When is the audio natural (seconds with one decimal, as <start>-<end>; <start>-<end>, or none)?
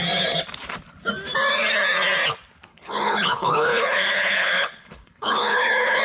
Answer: 0.0-2.7